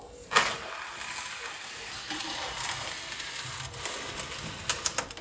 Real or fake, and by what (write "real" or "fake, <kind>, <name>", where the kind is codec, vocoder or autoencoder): real